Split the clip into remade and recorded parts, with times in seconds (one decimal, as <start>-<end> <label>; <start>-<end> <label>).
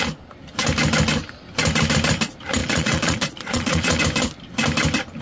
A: 0.0-2.6 recorded; 2.6-4.0 remade; 4.0-5.2 recorded